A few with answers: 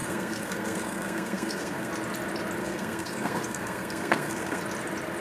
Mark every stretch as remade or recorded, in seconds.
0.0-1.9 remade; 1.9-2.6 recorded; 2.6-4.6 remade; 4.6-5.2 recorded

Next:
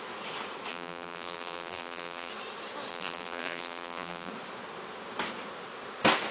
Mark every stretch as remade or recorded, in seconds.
0.0-0.7 recorded; 0.7-2.3 remade; 2.3-2.9 recorded; 2.9-4.3 remade; 4.3-6.3 recorded

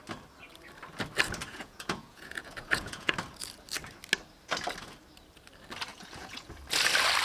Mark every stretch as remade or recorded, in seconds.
0.0-1.5 recorded; 1.5-3.1 remade; 3.1-5.9 recorded; 5.9-6.5 remade; 6.5-7.2 recorded

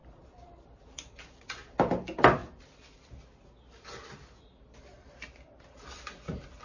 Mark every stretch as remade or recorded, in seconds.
0.0-1.3 remade; 1.3-6.6 recorded

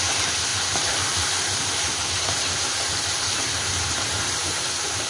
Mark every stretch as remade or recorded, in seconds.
0.0-5.1 remade